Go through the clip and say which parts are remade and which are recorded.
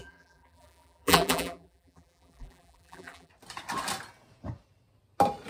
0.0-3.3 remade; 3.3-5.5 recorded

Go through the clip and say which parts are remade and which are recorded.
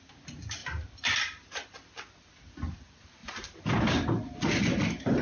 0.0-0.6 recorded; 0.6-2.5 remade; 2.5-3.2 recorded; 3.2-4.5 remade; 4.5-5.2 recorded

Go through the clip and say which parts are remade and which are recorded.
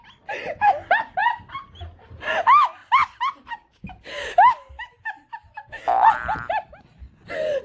0.0-7.6 recorded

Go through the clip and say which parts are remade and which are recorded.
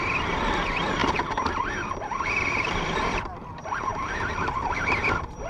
0.0-1.0 remade; 1.0-2.5 recorded; 2.5-5.5 remade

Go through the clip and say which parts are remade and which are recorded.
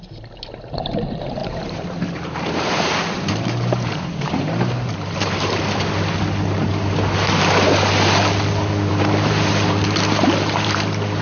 0.0-1.4 recorded; 1.4-5.6 remade; 5.6-8.9 recorded; 8.9-11.2 remade